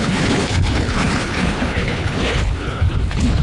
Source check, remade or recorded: remade